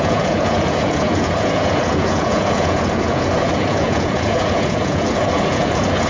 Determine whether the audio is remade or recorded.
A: remade